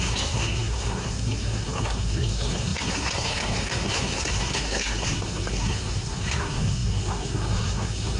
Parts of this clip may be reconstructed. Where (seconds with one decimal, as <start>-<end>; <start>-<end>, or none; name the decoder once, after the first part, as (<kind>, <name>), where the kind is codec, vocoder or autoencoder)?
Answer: 0.0-8.2 (codec, SNAC)